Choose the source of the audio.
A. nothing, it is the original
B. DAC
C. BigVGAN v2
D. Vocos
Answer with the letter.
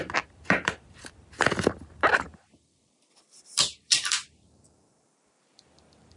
C